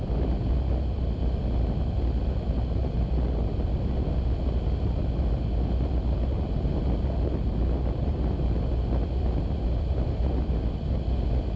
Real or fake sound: real